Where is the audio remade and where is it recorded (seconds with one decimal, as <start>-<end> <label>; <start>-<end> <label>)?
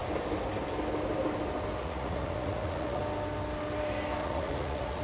0.0-1.8 recorded; 1.8-3.0 remade; 3.0-4.2 recorded; 4.2-5.0 remade